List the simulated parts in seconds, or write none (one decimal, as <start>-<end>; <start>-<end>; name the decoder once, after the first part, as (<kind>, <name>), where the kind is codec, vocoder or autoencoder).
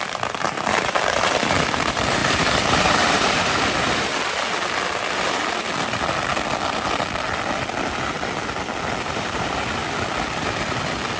0.0-4.1 (vocoder, BigVGAN v2); 9.1-9.8